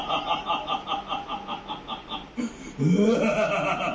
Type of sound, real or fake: real